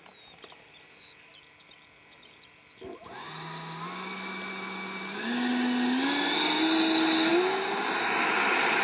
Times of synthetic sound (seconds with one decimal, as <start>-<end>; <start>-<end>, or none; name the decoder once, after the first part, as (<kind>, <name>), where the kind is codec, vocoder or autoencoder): none